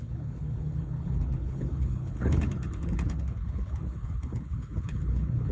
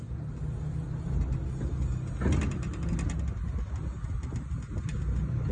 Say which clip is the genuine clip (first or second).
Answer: second